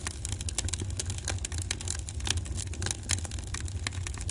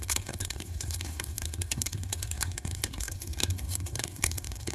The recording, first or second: first